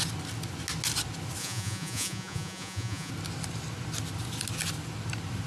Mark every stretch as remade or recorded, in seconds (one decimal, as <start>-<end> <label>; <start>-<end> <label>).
0.0-1.4 recorded; 1.4-3.1 remade; 3.1-5.5 recorded